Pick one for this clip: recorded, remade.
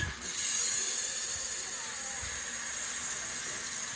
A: recorded